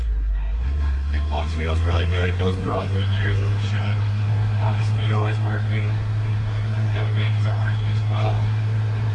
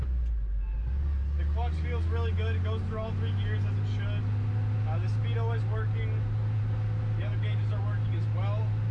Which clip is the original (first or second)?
second